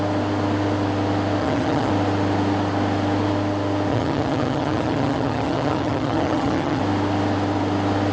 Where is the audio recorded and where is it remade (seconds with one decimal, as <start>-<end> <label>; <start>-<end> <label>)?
0.0-1.4 recorded; 1.4-1.9 remade; 1.9-3.9 recorded; 3.9-6.8 remade; 6.8-8.1 recorded